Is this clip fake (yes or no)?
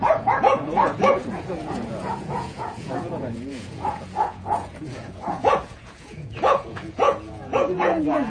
yes